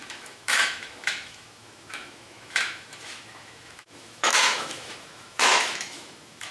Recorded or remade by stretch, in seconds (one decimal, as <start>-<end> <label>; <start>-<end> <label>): 0.0-6.5 remade